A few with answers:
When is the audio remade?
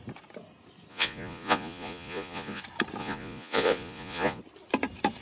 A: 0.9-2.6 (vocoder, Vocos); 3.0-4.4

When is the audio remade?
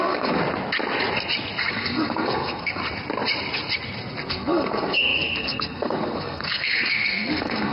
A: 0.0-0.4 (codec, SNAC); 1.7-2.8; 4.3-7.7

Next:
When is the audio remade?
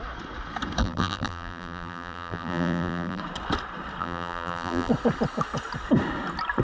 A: 0.8-3.2 (vocoder, BigVGAN v2); 4.0-4.9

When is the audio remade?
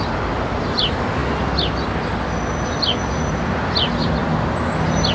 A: 0.0-1.2 (vocoder, BigVGAN v2); 3.2-4.2